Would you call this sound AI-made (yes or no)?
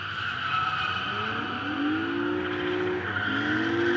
no